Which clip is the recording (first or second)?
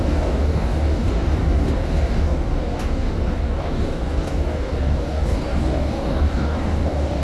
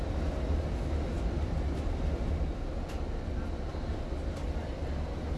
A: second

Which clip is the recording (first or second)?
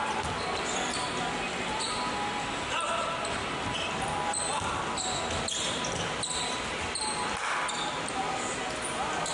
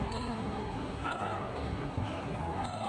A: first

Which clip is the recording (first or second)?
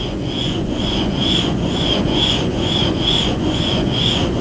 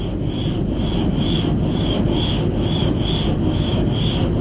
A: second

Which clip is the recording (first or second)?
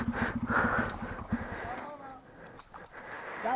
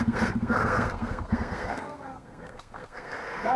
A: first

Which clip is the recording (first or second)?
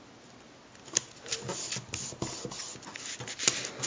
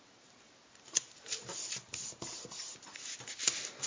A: first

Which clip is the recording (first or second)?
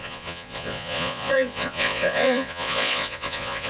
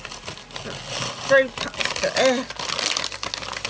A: second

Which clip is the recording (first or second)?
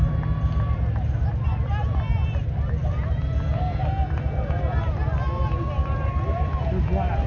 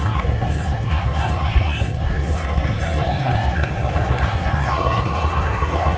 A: first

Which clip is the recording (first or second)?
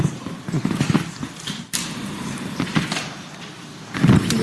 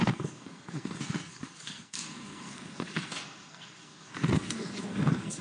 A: first